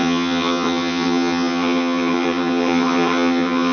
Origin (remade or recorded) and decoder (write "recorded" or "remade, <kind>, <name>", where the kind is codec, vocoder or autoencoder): remade, vocoder, HiFi-GAN